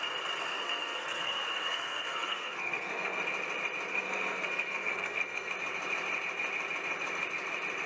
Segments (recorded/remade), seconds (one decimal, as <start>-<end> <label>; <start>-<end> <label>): 0.0-0.4 recorded; 0.4-3.2 remade; 3.2-3.9 recorded; 3.9-5.5 remade; 5.5-7.9 recorded